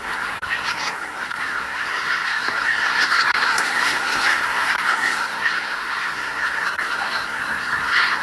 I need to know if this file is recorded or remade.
remade